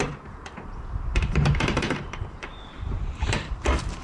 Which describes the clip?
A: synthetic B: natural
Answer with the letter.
A